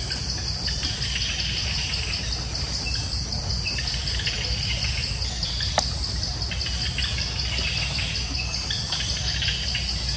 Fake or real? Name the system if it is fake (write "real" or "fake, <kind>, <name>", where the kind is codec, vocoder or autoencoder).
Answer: real